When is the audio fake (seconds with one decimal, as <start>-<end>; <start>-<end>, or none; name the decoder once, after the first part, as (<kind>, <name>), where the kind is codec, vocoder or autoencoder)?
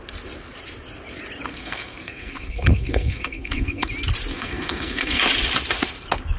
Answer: 1.5-3.9 (codec, SNAC); 4.3-5.2